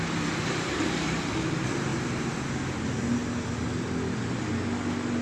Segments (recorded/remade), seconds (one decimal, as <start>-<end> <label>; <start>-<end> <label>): 0.0-1.9 recorded; 1.9-2.5 remade; 2.5-5.2 recorded